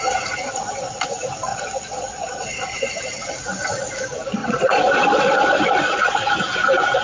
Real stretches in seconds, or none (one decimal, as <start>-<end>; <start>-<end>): 0.0-1.5; 2.9-4.4; 6.2-7.0